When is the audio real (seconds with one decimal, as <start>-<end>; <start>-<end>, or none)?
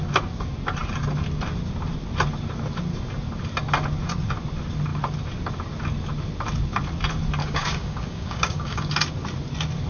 0.0-7.4; 8.9-9.9